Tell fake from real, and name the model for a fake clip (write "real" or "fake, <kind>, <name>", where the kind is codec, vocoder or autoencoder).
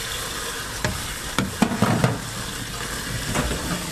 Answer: real